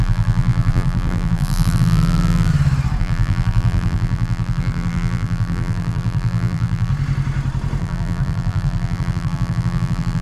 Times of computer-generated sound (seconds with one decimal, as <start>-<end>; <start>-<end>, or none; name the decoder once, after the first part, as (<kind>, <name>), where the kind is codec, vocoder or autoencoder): 0.0-2.5 (vocoder, BigVGAN v2); 3.0-6.9; 7.8-10.2